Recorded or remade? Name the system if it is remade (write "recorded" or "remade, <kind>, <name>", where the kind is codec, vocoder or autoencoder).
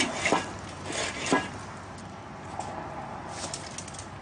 recorded